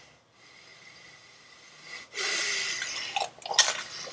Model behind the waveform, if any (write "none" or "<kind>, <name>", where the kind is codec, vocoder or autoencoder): none